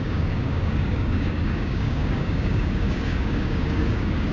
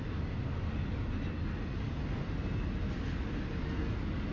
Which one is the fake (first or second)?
first